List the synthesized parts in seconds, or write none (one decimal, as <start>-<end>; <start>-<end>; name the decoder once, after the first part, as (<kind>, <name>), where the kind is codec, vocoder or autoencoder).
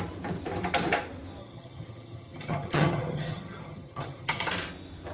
1.4-4.5 (vocoder, HiFi-GAN)